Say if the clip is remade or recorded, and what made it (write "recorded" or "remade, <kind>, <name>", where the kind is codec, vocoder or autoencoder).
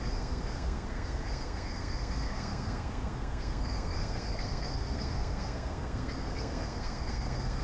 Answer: remade, codec, SNAC